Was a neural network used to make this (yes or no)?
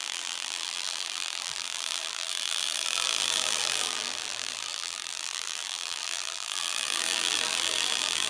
yes